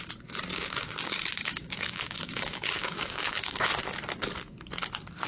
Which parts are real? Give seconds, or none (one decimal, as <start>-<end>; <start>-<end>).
0.0-0.5; 3.7-5.3